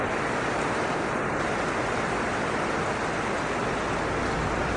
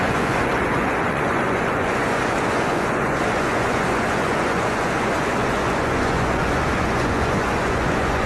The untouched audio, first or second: first